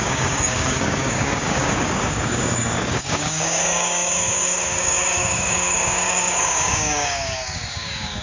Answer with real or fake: fake